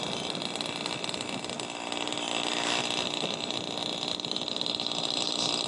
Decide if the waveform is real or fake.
real